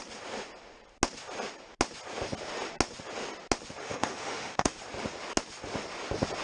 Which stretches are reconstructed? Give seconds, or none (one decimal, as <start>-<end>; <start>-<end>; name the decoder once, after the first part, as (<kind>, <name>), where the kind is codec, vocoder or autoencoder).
3.8-4.8 (autoencoder, DAC-VAE)